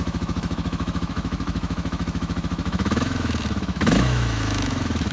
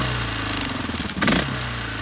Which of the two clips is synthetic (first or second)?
first